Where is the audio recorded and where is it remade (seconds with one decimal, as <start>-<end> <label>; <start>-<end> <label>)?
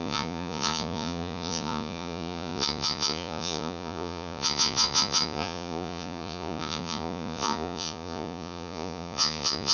0.0-9.7 remade